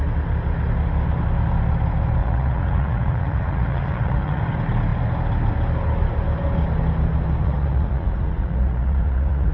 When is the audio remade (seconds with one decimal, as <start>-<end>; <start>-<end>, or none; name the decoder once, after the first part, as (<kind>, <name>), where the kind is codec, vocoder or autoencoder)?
2.2-4.4 (vocoder, Vocos); 7.4-9.5